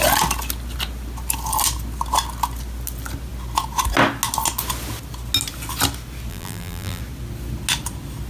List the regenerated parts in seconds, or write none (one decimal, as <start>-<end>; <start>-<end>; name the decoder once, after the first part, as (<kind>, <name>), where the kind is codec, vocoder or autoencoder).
6.3-7.0 (vocoder, BigVGAN v2)